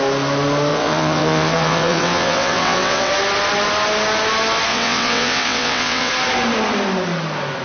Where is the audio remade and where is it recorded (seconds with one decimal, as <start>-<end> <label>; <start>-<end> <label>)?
0.0-0.7 recorded; 0.7-3.1 remade; 3.1-4.7 recorded; 4.7-6.1 remade; 6.1-7.6 recorded